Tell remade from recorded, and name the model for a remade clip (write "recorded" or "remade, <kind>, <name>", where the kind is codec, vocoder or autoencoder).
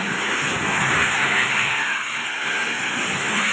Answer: remade, codec, SNAC